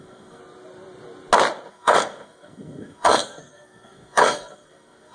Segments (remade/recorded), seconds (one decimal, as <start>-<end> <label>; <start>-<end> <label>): 0.0-0.4 remade; 0.4-1.7 recorded; 1.7-5.1 remade